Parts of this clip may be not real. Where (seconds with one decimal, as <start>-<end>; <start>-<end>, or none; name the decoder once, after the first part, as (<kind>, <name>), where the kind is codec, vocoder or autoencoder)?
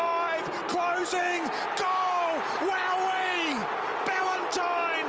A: none